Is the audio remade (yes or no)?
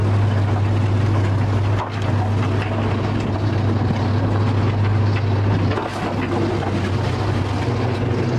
no